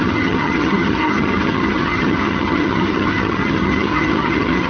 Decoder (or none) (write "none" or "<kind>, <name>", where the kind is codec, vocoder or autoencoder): vocoder, HiFi-GAN